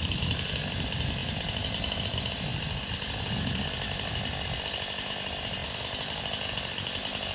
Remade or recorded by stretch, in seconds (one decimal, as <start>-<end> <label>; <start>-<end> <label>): 0.0-7.3 recorded